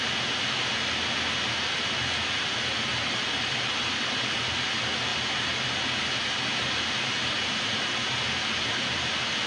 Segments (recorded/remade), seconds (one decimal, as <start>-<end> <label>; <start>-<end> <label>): 0.0-9.5 recorded